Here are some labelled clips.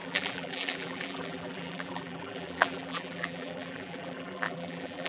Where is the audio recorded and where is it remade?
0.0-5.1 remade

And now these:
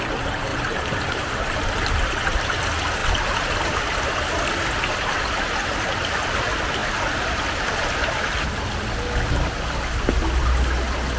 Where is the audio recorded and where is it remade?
0.0-0.5 recorded; 0.5-2.1 remade; 2.1-11.2 recorded